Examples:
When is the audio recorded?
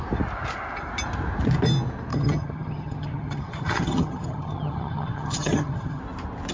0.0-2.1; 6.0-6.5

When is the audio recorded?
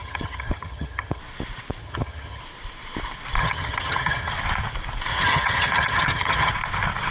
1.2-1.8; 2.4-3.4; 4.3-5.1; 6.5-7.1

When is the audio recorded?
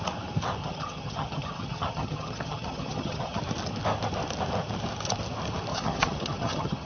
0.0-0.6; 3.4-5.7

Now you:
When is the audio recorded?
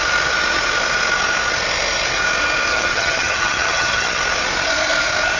0.0-2.7; 4.2-5.4